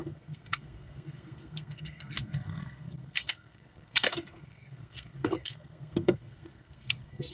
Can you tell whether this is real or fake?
fake